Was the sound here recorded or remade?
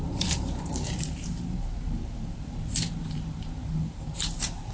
remade